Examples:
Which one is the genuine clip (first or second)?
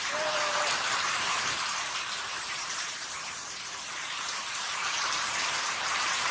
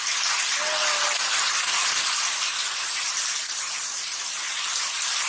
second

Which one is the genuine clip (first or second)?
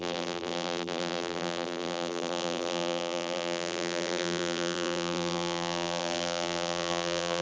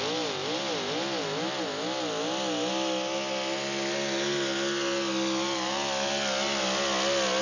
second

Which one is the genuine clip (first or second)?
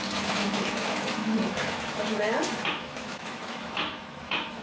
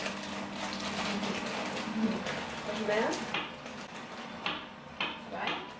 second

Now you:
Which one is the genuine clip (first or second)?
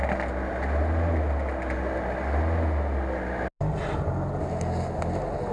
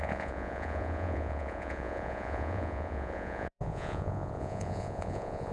first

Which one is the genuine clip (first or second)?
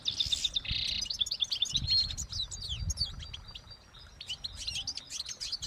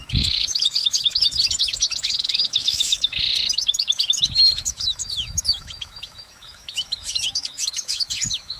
first